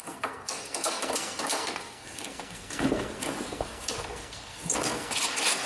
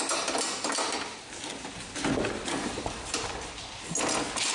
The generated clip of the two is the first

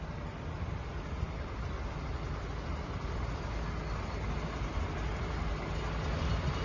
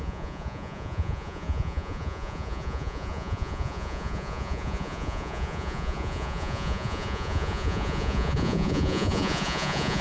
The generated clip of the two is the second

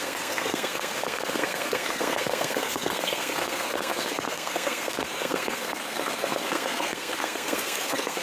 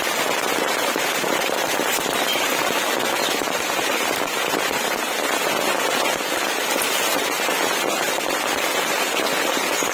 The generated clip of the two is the first